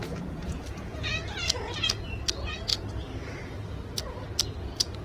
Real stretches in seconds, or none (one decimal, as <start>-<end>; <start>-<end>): 1.1-2.3; 2.7-4.6